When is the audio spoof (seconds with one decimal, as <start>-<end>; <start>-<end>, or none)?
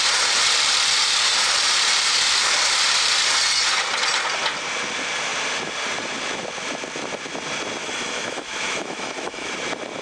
7.8-9.5